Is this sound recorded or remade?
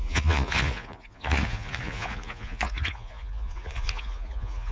remade